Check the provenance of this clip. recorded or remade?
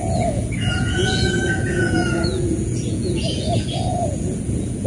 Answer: remade